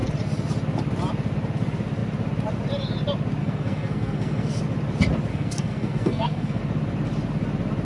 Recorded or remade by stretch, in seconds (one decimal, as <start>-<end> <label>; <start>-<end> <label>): 0.0-3.4 recorded; 3.4-4.6 remade; 4.6-5.3 recorded; 5.3-6.6 remade; 6.6-7.8 recorded